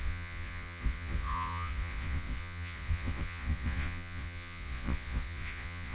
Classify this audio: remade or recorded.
remade